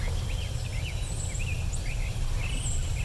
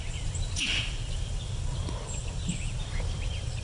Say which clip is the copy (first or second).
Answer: second